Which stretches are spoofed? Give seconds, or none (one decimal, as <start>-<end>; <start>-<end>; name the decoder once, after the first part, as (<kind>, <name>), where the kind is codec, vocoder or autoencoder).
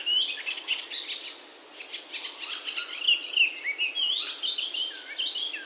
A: none